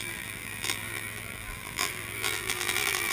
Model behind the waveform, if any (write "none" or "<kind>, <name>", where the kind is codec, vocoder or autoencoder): vocoder, BigVGAN v2